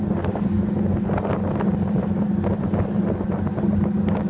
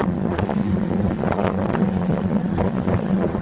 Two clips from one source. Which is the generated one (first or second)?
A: second